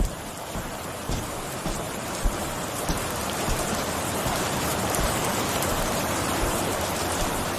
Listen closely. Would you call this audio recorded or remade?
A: remade